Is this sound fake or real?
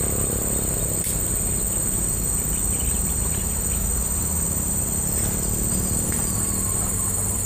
real